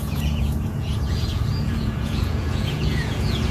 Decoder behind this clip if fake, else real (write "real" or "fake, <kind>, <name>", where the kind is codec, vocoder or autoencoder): fake, vocoder, Vocos